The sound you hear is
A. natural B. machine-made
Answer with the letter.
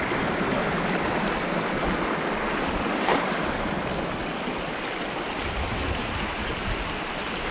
A